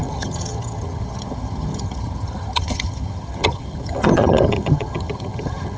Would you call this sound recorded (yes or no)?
no